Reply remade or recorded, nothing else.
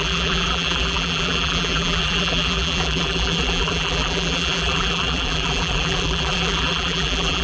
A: remade